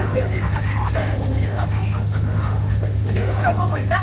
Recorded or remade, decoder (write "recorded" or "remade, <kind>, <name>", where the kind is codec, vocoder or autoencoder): remade, autoencoder, DAC-VAE